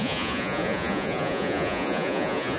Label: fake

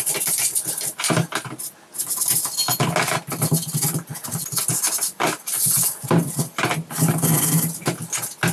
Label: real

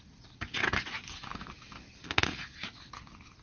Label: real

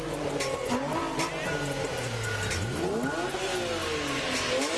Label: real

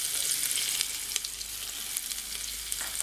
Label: real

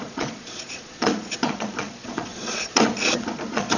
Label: fake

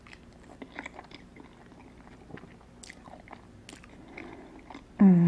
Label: real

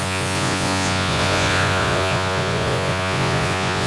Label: fake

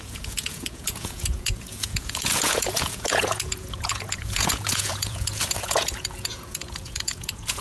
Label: fake